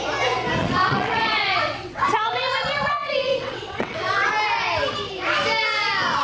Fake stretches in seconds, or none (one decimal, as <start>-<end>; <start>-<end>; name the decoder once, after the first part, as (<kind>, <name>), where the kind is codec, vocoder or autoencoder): 0.6-4.3 (vocoder, WaveNeXt)